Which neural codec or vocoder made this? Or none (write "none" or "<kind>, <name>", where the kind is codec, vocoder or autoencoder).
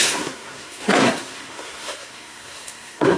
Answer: codec, SNAC